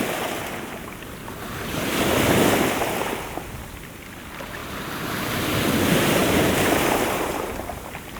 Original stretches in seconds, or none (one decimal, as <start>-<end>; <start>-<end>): 0.0-1.2; 2.0-6.2; 7.5-8.2